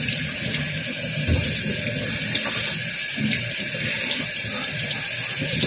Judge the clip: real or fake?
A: real